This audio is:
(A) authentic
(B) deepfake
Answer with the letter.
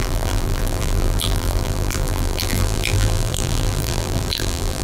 B